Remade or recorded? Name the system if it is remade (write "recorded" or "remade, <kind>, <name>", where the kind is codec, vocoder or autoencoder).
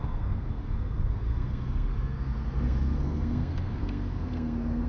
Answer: remade, codec, SNAC